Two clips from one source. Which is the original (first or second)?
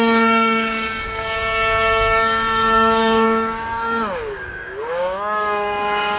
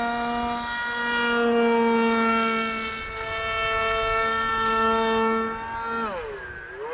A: second